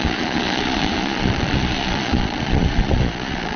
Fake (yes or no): yes